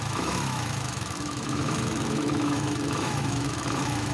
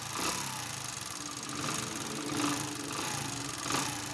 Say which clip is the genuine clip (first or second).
second